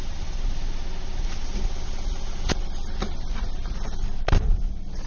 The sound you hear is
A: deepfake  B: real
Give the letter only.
A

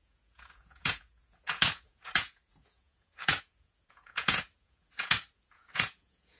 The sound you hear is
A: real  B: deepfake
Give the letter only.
B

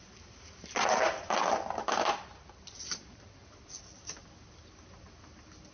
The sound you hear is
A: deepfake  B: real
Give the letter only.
A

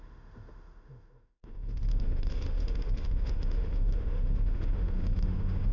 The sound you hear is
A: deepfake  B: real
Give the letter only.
A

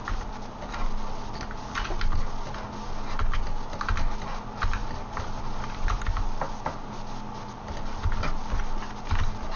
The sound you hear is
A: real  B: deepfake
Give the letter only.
A